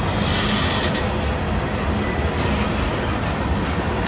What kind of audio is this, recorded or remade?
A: recorded